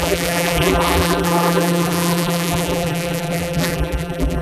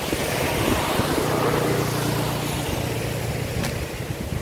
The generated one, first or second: first